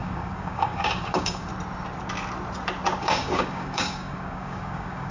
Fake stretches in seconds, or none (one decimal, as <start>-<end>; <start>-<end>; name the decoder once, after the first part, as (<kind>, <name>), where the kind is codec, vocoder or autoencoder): 0.0-1.5 (codec, DAC); 3.0-5.1